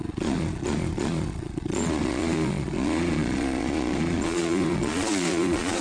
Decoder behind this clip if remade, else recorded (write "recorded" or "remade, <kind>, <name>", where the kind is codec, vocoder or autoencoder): remade, vocoder, Vocos